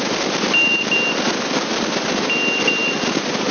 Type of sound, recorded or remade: recorded